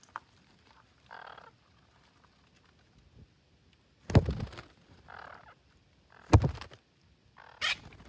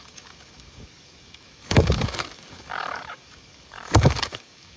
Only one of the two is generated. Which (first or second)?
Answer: second